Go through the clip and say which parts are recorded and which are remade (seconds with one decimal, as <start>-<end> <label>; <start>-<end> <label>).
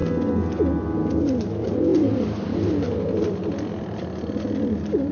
0.0-5.1 recorded